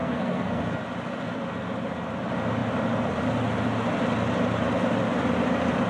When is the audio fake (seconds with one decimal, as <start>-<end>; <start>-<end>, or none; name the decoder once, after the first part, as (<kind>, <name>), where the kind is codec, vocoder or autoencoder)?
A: 0.0-0.6 (codec, SNAC)